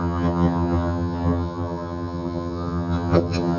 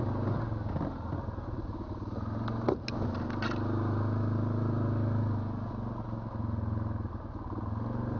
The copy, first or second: first